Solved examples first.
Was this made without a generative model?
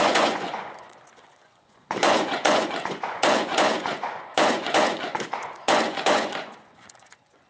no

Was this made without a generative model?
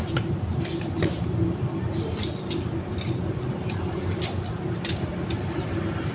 yes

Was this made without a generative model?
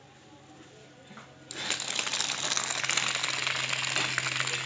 yes